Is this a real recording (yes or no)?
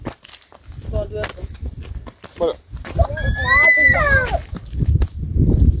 yes